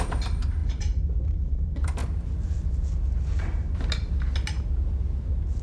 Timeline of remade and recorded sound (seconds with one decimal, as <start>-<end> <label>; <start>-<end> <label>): 0.0-2.0 remade; 2.0-5.6 recorded

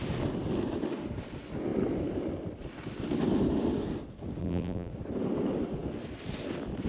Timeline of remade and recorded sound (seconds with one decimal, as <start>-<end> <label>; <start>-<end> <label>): 0.0-4.4 recorded; 4.4-4.9 remade; 4.9-6.9 recorded

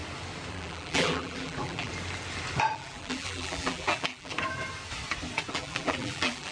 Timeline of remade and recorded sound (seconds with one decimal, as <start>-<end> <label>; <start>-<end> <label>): 0.0-0.5 recorded; 0.5-1.9 remade; 1.9-2.7 recorded; 2.7-4.3 remade; 4.3-5.5 recorded; 5.5-6.5 remade

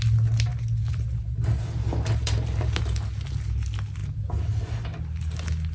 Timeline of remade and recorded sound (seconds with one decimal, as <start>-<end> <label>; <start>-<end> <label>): 0.0-0.5 recorded; 0.5-2.8 remade; 2.8-5.7 recorded

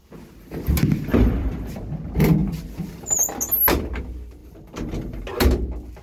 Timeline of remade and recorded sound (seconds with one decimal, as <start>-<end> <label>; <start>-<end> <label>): 0.0-1.1 recorded; 1.1-1.7 remade; 1.7-4.4 recorded; 4.4-5.2 remade; 5.2-6.0 recorded